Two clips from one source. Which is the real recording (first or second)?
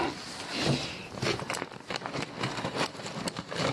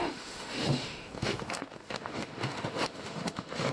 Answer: first